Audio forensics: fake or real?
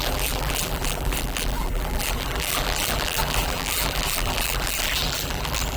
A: fake